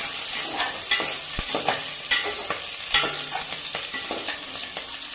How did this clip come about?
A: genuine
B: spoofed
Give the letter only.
A